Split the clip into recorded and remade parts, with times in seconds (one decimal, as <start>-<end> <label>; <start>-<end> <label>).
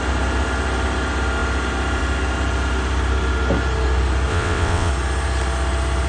0.0-4.3 recorded; 4.3-4.9 remade; 4.9-6.1 recorded